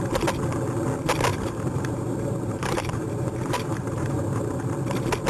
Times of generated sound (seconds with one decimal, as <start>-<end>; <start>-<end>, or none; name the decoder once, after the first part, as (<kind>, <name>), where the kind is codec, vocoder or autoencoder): 1.3-4.5 (vocoder, BigVGAN v2)